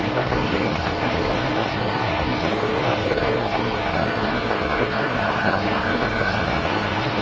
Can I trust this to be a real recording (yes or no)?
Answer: no